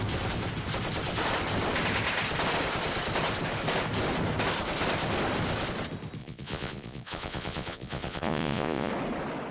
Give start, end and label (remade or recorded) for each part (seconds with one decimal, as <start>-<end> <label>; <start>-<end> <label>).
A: 0.0-6.2 recorded; 6.2-8.9 remade; 8.9-9.5 recorded